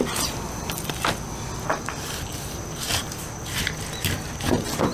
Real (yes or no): yes